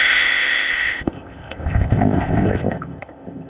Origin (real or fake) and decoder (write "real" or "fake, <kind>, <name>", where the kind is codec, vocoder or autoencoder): fake, codec, ZipCodec